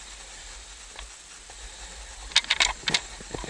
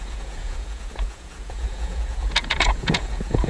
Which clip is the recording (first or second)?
first